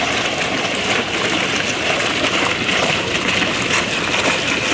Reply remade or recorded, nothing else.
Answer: recorded